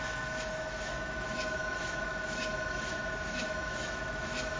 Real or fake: fake